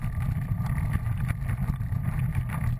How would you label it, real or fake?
real